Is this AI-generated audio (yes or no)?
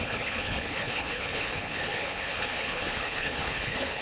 yes